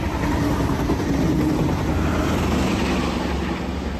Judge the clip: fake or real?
real